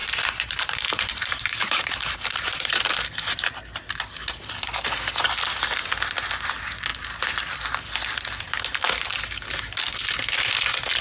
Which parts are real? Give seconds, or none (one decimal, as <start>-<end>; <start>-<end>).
2.9-11.0